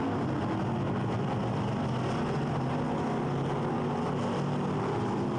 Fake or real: real